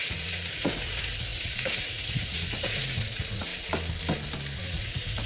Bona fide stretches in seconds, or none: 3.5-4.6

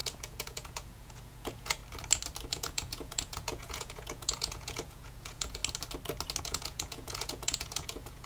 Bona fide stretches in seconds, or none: 1.8-2.5; 5.6-6.4